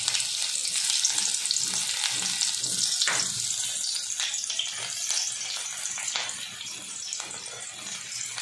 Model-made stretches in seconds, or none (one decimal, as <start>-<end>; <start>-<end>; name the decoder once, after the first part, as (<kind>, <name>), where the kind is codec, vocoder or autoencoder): none